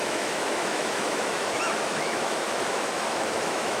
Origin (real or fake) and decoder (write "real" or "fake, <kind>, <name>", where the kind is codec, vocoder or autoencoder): fake, autoencoder, DAC-VAE